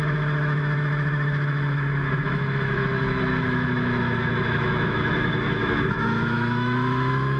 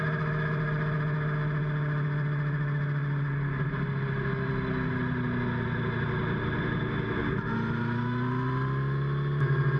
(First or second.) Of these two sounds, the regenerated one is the first